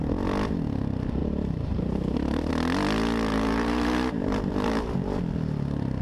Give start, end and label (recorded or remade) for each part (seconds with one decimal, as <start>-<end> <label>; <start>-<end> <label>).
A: 0.0-1.2 recorded; 1.2-2.5 remade; 2.5-3.3 recorded; 3.3-5.2 remade; 5.2-6.0 recorded